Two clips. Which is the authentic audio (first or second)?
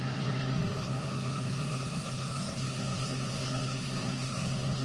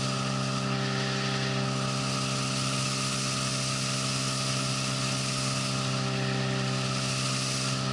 second